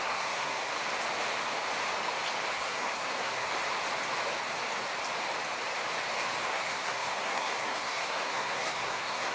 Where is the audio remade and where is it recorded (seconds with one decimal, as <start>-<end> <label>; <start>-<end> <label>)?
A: 0.0-0.7 remade; 0.7-2.5 recorded; 2.5-3.5 remade; 3.5-6.5 recorded; 6.5-9.3 remade